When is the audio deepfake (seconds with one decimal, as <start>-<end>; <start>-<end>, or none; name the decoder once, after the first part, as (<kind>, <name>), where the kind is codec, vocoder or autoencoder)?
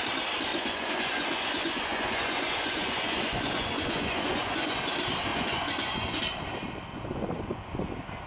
0.5-4.8 (vocoder, Vocos); 5.3-6.2; 6.9-7.9